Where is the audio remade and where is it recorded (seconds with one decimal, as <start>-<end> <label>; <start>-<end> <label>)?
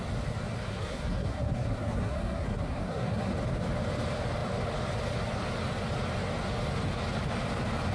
0.0-0.6 recorded; 0.6-3.3 remade; 3.3-7.9 recorded